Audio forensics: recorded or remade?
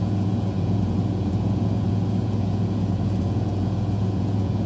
remade